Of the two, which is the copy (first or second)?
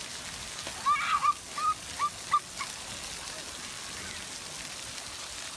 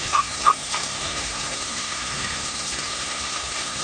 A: second